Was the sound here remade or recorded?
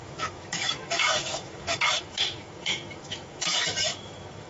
remade